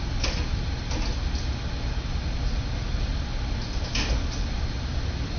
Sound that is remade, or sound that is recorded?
recorded